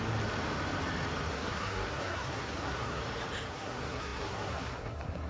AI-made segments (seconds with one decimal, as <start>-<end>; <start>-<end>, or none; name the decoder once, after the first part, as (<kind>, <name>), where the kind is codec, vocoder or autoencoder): 1.3-3.0 (codec, SNAC); 3.5-5.3